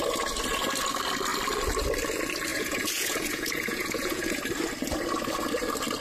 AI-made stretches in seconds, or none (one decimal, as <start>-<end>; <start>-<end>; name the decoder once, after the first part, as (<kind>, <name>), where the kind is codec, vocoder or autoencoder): 2.5-4.4 (vocoder, Vocos)